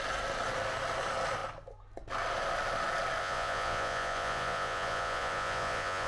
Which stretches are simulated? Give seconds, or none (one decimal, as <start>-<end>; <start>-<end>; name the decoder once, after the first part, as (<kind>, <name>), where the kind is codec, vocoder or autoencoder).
3.2-6.1 (vocoder, Vocos)